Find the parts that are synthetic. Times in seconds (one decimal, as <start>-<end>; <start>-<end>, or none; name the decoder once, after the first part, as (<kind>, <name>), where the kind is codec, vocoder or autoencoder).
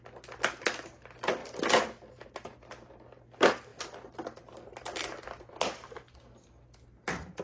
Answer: none